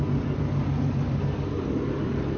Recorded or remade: remade